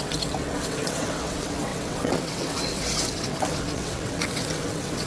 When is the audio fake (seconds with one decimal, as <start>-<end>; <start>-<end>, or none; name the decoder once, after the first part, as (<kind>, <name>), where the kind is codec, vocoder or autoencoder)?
0.0-5.1 (vocoder, WaveNeXt)